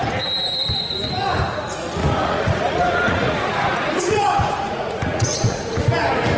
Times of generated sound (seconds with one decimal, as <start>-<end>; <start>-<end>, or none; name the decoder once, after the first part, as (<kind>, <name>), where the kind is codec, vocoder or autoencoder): 2.0-5.8 (vocoder, Vocos)